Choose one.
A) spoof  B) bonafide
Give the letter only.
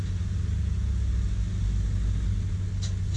B